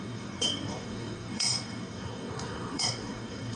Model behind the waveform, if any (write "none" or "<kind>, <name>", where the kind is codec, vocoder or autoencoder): codec, SNAC